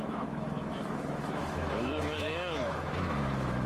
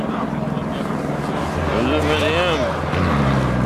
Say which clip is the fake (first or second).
first